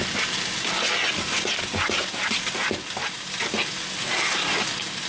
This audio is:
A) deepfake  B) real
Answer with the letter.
B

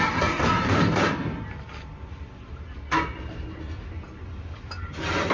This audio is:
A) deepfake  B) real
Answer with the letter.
A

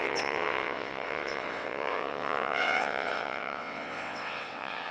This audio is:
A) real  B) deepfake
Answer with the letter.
B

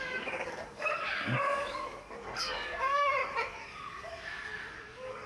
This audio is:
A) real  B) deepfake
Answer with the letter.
B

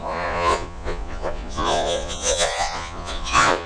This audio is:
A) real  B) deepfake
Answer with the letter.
B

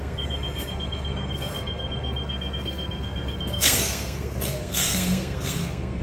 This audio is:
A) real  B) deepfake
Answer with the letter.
B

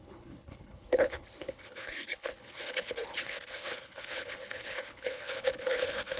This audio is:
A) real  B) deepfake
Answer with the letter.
B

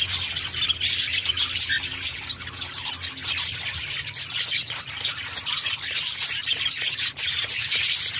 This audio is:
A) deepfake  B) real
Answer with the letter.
B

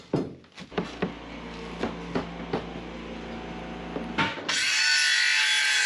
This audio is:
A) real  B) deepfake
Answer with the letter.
A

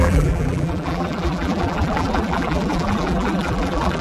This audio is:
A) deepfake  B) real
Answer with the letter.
A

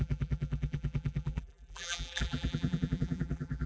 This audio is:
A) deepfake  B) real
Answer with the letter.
A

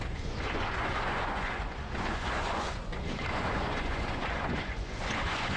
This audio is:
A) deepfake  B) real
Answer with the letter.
A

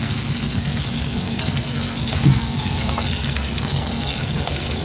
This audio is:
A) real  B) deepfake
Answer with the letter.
B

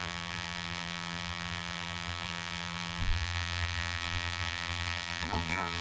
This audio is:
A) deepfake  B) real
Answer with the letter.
A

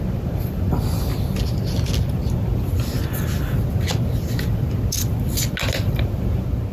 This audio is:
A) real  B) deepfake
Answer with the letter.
A